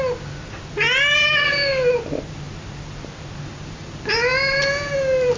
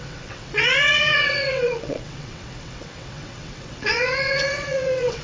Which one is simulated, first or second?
second